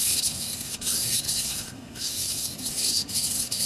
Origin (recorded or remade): remade